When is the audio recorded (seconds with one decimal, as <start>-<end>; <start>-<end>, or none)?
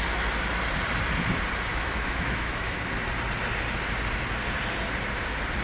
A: 0.0-1.7; 2.8-5.6